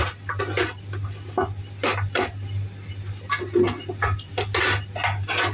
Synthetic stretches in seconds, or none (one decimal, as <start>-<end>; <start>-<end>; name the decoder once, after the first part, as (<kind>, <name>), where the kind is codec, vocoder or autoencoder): none